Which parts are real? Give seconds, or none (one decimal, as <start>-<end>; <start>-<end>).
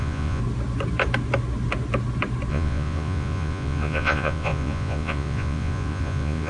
0.4-2.5